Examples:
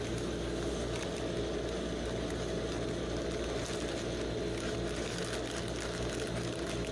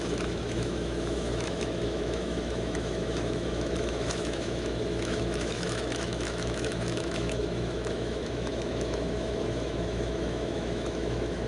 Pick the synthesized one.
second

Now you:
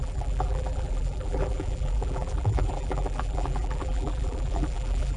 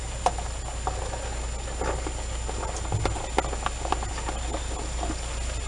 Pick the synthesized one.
first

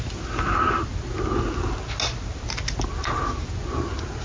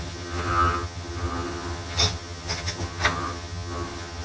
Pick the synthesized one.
second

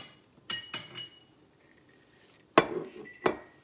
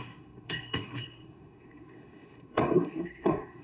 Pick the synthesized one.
second